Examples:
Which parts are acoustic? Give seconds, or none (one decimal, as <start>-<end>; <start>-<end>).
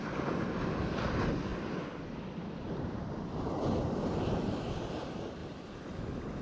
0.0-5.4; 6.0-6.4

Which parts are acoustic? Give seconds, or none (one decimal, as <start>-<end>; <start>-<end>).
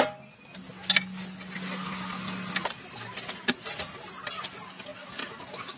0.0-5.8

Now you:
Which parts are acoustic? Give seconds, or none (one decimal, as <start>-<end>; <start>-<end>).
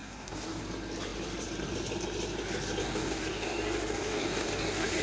0.6-2.8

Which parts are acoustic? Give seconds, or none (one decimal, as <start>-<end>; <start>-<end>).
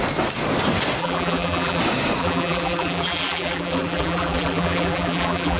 0.0-1.0; 1.8-2.2